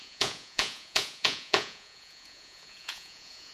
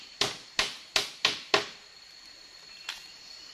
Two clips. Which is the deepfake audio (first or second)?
first